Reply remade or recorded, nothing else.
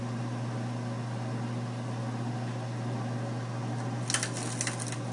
recorded